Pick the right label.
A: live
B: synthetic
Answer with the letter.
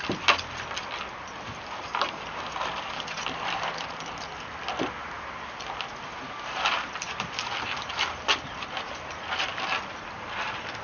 A